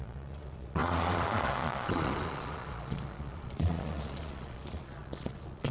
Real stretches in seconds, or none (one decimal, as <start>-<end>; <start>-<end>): none